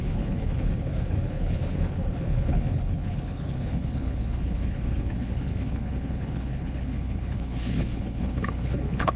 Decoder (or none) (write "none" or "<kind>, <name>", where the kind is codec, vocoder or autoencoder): codec, HILCodec